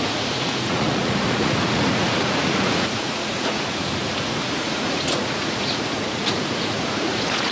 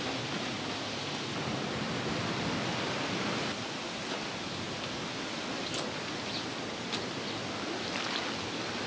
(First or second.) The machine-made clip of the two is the first